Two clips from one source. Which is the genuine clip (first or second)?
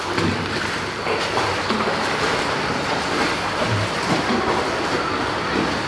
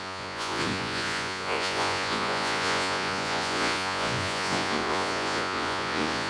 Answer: first